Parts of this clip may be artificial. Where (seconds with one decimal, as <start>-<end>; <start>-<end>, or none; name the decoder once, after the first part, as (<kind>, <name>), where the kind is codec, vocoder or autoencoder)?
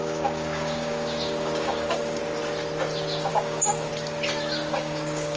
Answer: 0.0-2.2 (codec, DAC); 3.3-3.9; 4.7-5.4